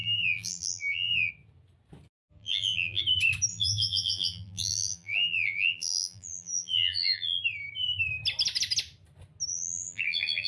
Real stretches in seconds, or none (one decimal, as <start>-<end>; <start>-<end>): 1.3-2.4; 3.0-3.5; 7.4-9.5